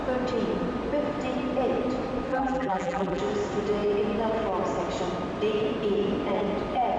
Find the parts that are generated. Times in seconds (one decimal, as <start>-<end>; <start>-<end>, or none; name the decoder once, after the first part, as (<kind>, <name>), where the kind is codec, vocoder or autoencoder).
2.3-3.2 (vocoder, BigVGAN v2)